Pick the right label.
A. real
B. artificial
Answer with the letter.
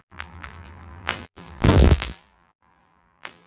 B